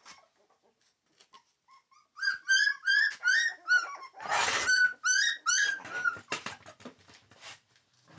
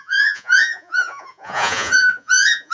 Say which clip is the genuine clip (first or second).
first